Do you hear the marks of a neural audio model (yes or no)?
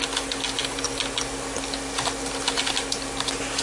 no